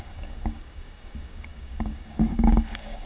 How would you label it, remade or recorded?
remade